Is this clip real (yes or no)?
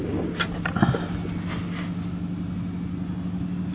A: yes